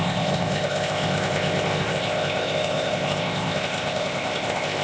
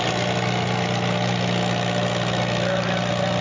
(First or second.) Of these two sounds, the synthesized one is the first